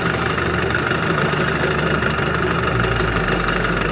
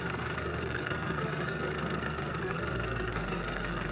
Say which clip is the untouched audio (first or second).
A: first